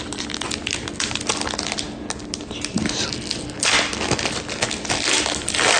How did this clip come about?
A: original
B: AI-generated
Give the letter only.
A